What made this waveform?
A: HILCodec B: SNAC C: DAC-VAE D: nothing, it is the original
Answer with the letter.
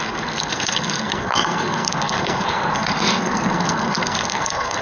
B